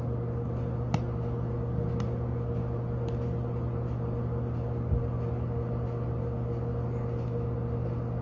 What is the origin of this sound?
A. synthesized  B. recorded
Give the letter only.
B